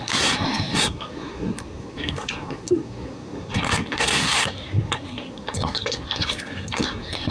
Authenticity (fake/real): fake